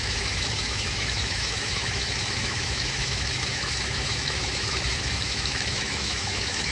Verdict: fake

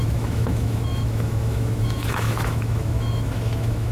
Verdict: fake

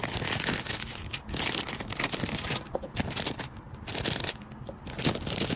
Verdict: real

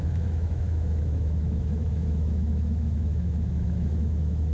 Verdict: fake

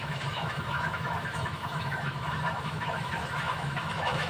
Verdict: fake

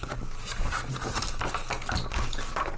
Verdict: real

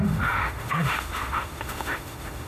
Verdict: fake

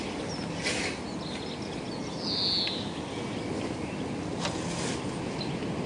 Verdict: real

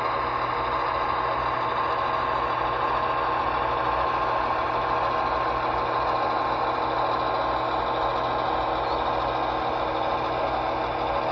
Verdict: real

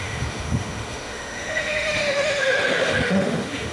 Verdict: fake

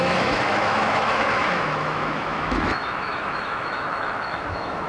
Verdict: fake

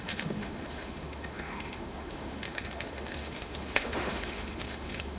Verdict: fake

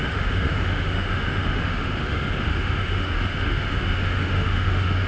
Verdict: fake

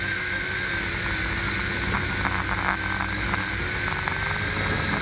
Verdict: real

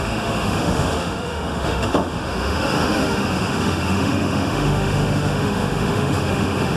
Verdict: fake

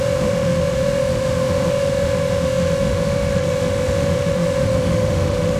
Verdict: fake